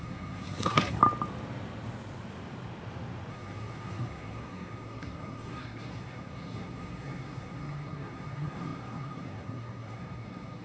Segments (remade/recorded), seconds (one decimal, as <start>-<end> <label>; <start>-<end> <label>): 0.0-1.0 remade; 1.0-3.3 recorded; 3.3-10.6 remade